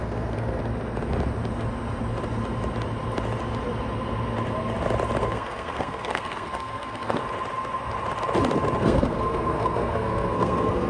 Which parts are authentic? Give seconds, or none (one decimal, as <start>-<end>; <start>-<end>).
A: 0.6-5.2; 7.2-8.8